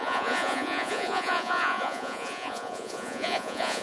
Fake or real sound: fake